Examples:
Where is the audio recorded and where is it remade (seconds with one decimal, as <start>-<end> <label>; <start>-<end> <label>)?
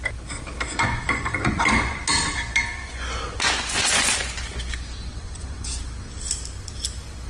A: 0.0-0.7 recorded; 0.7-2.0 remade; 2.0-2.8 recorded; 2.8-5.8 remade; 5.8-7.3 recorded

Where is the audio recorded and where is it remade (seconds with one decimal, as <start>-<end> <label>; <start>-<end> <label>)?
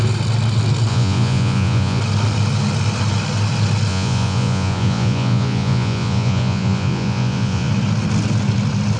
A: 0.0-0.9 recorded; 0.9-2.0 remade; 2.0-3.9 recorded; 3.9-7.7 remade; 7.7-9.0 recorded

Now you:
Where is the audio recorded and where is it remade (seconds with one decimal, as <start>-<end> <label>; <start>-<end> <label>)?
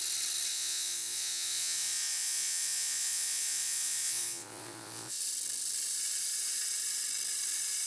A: 0.0-0.5 recorded; 0.5-5.2 remade; 5.2-7.9 recorded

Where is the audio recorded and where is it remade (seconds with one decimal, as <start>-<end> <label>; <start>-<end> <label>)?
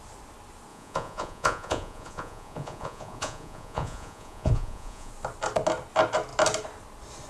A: 0.0-0.7 recorded; 0.7-5.1 remade; 5.1-7.3 recorded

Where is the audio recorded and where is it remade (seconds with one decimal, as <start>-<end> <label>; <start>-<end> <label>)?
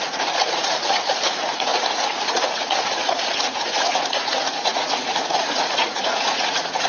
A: 0.0-6.9 remade